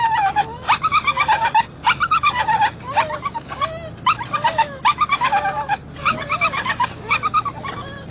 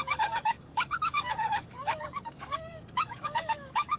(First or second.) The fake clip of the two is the second